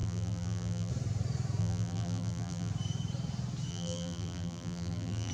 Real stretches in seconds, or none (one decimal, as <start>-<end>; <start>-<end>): 0.9-1.6; 2.7-3.7